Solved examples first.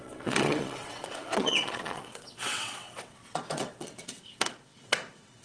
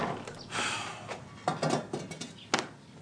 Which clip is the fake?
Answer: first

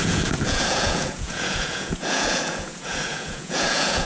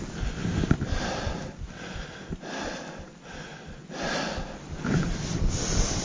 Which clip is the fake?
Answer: first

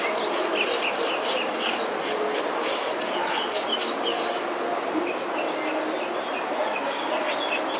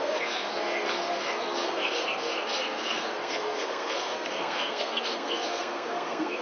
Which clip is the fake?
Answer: second